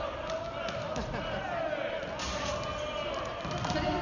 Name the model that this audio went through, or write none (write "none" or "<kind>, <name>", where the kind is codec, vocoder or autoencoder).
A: none